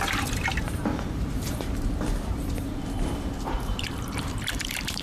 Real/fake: fake